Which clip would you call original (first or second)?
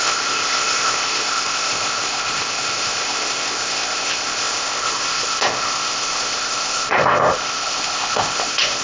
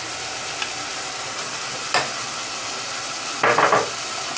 second